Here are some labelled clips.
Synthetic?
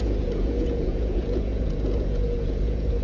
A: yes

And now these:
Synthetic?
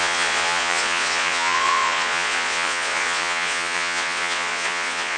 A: yes